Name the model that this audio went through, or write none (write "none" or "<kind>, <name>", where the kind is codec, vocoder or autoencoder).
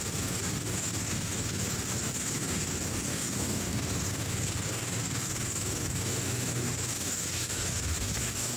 codec, DAC